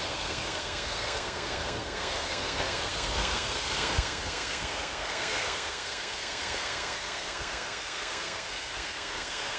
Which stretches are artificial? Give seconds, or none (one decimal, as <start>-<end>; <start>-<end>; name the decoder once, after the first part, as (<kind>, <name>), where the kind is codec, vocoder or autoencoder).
0.0-9.6 (codec, SNAC)

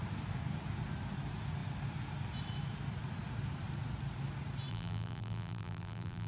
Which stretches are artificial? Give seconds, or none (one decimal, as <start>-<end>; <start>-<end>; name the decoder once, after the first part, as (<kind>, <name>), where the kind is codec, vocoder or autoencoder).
4.7-6.3 (vocoder, BigVGAN v2)

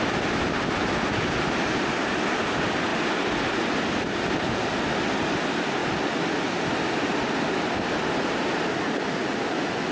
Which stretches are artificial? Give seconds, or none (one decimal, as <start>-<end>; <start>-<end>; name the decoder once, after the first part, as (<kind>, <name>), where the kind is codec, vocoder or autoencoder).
none

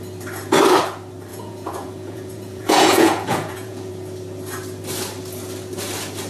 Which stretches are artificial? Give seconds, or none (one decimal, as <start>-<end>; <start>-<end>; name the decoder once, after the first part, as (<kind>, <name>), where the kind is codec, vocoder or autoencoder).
1.3-3.9 (vocoder, Vocos)

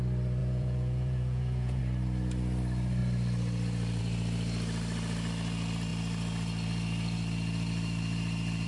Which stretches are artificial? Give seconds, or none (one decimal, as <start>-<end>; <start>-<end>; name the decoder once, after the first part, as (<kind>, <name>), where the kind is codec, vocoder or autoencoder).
0.4-1.8 (vocoder, Vocos)

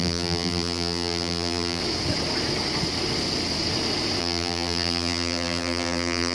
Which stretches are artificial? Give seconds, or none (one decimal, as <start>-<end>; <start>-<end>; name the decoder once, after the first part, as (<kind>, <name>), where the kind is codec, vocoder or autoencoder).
0.0-1.8 (vocoder, BigVGAN v2); 4.2-6.3